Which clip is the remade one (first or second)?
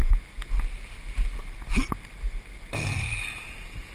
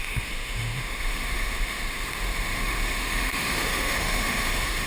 second